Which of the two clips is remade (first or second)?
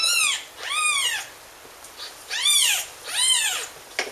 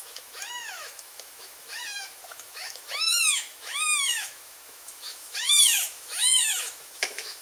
second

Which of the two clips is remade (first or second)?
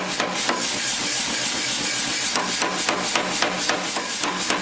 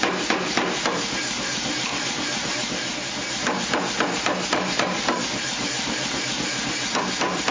second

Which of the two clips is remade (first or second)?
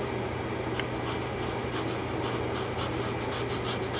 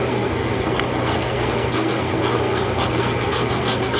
second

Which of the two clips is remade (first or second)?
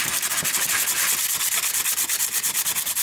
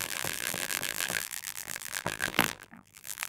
second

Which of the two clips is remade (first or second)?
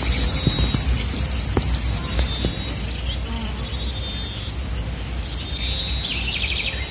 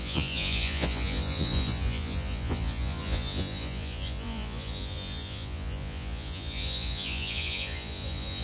second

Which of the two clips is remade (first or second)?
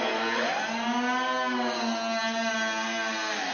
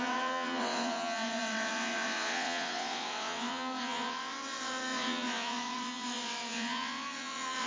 second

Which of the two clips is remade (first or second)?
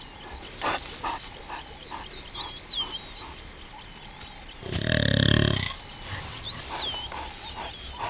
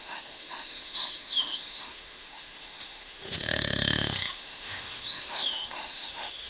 second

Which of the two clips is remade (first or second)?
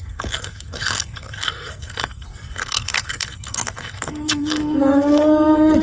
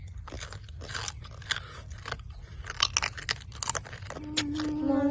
first